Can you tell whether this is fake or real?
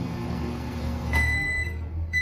fake